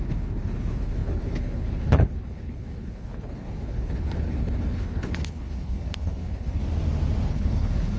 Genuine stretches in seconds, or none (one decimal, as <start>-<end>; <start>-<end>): 6.6-7.3